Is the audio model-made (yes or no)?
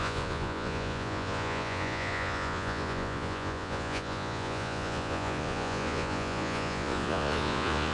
yes